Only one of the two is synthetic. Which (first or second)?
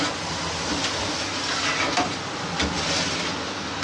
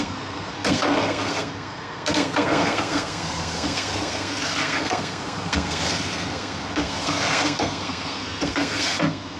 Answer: second